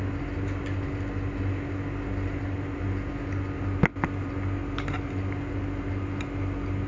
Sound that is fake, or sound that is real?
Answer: real